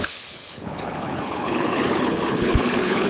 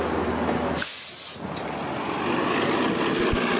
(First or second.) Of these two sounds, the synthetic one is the first